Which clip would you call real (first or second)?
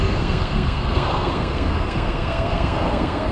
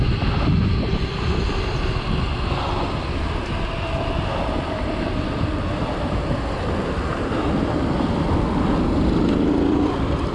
second